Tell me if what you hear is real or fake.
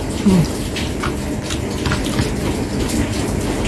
real